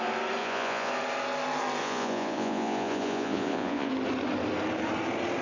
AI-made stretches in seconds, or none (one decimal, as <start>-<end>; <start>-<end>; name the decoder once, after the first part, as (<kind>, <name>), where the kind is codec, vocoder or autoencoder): 0.4-0.9 (vocoder, Vocos); 1.8-3.9